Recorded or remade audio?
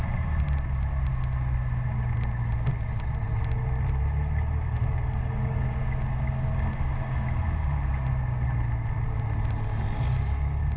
recorded